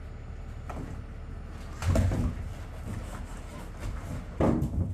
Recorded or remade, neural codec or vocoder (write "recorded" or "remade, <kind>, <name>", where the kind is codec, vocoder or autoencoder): recorded